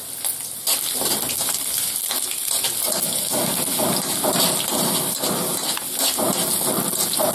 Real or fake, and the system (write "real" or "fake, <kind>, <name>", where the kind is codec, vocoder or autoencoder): real